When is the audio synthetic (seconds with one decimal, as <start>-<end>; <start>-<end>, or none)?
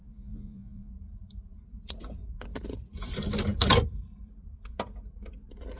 0.0-0.9